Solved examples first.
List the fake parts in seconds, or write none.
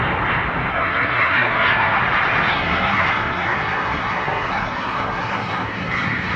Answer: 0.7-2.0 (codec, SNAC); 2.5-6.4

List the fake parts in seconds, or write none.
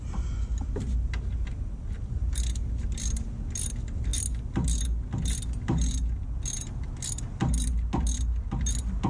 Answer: none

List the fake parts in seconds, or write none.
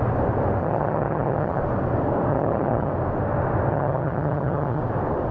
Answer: 0.6-1.6 (vocoder, HiFi-GAN); 2.3-2.9; 3.7-4.8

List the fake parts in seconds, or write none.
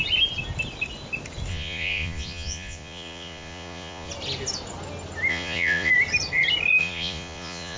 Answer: 1.5-4.1 (vocoder, Vocos); 5.3-5.9; 6.8-7.8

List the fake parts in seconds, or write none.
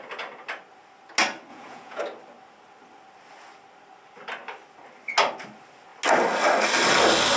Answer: 1.5-2.0 (vocoder, Vocos)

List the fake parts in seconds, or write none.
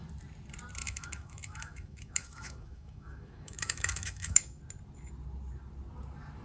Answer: 0.8-4.6 (autoencoder, DAC-VAE)